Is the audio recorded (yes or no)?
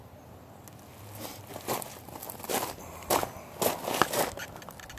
yes